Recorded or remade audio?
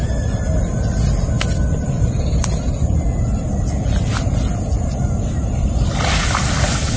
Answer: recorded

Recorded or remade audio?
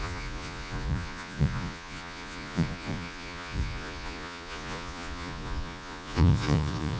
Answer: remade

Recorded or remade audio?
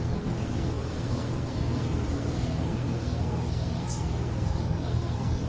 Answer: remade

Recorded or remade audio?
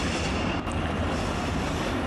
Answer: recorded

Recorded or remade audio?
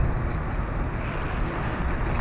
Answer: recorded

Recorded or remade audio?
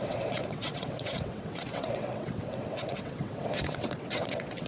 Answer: remade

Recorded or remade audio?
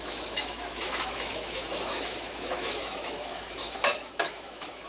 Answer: remade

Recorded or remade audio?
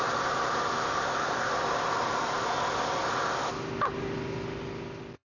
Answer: recorded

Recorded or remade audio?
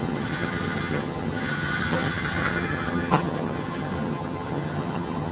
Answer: remade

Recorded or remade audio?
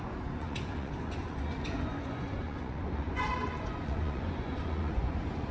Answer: remade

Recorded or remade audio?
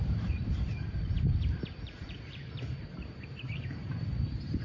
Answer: remade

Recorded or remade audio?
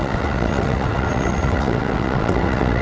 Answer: remade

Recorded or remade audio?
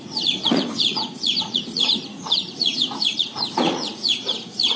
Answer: remade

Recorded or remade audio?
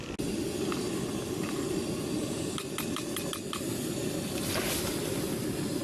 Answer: recorded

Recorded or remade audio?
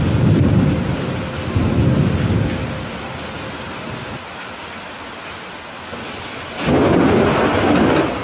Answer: recorded